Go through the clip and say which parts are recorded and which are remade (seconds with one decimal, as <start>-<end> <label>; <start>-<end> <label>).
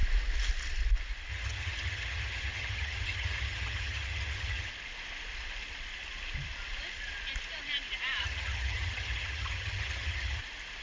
0.0-1.3 recorded; 1.3-4.7 remade; 4.7-8.2 recorded; 8.2-10.4 remade; 10.4-10.8 recorded